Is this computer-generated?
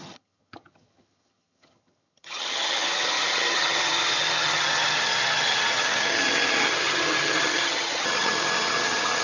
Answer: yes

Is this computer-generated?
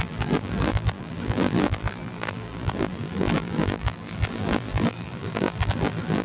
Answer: yes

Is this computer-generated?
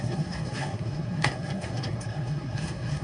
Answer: yes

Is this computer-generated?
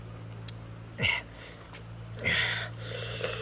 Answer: no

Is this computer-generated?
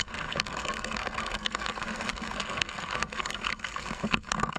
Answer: yes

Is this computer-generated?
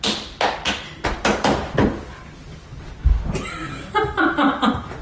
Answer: no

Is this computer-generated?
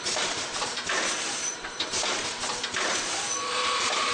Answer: yes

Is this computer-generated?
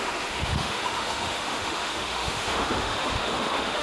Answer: yes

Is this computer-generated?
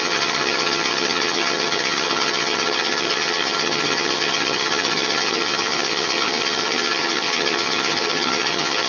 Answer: yes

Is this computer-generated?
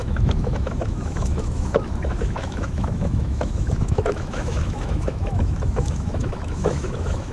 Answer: yes